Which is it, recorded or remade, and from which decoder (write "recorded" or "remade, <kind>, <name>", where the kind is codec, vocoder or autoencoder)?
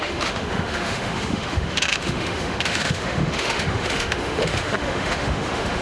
remade, autoencoder, DAC-VAE